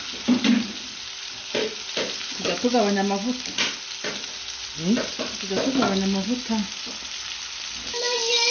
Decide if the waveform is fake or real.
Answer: real